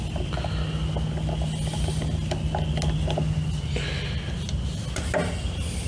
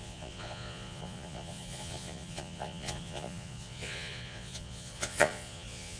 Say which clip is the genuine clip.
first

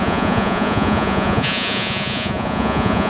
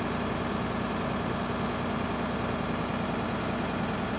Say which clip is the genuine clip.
second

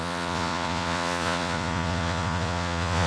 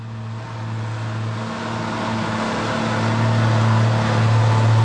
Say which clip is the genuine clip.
second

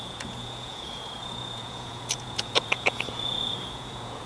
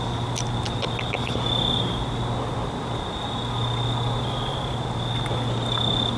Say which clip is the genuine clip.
second